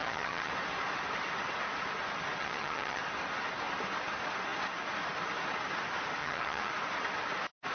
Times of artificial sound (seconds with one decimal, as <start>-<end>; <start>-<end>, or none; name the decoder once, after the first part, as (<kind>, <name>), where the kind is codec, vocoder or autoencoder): 0.0-0.5 (vocoder, HiFi-GAN); 2.4-3.0; 6.2-6.7

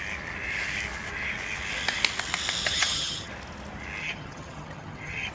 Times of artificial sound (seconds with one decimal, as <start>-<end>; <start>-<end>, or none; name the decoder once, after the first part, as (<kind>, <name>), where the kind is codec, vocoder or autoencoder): 2.6-3.3 (vocoder, HiFi-GAN); 4.0-5.3

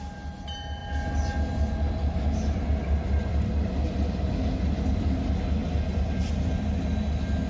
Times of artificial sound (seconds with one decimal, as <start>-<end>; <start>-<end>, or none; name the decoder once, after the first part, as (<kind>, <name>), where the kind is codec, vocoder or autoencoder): none

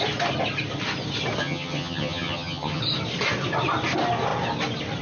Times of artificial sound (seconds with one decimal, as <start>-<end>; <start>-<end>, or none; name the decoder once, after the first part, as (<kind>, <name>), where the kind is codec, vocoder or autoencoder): 1.4-2.8 (vocoder, HiFi-GAN)